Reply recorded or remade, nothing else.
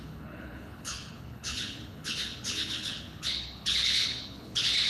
remade